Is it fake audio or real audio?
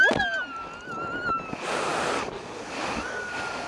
real